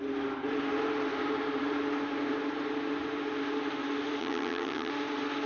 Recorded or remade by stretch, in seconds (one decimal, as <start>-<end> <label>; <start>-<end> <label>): 0.0-4.2 recorded; 4.2-4.9 remade; 4.9-5.5 recorded